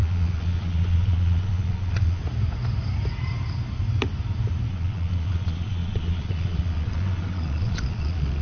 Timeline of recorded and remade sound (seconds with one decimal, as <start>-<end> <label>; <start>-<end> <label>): 0.0-2.2 remade; 2.2-4.7 recorded; 4.7-8.4 remade